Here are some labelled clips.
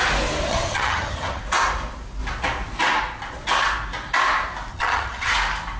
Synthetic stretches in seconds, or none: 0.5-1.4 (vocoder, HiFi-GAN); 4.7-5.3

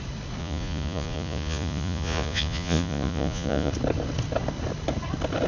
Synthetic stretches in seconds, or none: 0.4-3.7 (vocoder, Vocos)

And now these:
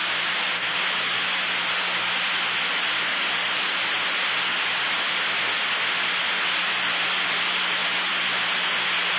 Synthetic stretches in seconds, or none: none

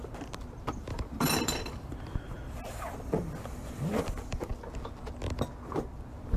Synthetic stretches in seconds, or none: 0.7-4.5 (vocoder, BigVGAN v2)

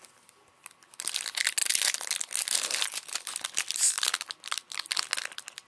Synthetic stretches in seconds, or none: none

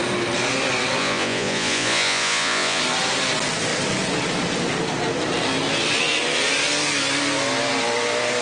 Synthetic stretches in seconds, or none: 1.0-2.8 (vocoder, Vocos)

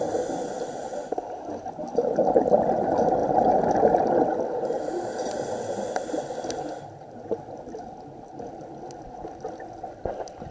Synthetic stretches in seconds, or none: none

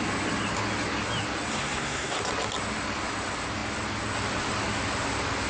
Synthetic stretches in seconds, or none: 1.5-2.2 (codec, SNAC)